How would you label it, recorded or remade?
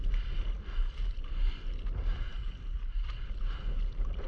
recorded